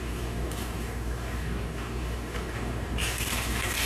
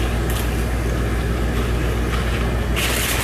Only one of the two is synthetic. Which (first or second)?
first